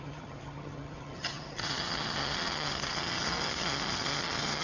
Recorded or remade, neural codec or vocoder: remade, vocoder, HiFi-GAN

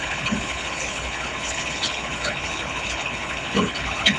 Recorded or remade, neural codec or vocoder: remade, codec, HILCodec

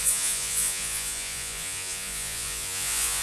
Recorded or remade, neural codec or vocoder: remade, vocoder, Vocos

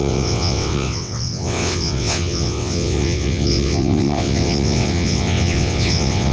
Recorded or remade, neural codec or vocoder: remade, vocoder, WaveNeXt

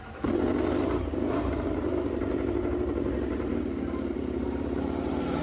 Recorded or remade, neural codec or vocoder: remade, vocoder, BigVGAN v2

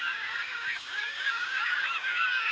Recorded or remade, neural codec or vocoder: remade, codec, DAC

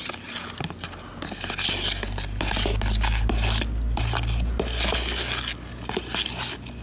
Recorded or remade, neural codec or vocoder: recorded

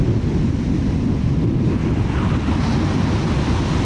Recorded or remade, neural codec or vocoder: recorded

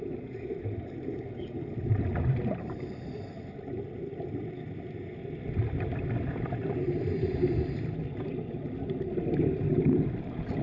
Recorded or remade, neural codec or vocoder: recorded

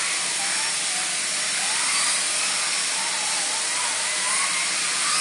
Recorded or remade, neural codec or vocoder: recorded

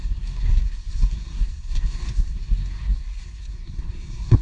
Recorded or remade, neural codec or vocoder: remade, codec, SNAC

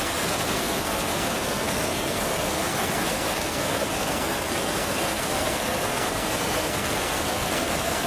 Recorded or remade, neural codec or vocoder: remade, codec, SNAC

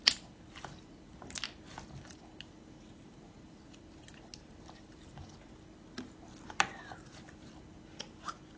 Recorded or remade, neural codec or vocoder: recorded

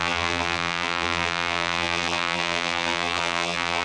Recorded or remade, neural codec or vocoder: remade, vocoder, BigVGAN v2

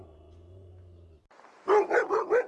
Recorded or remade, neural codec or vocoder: recorded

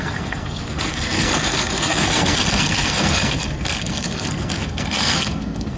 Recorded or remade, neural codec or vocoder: remade, codec, SNAC